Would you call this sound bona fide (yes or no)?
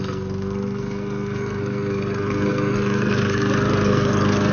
no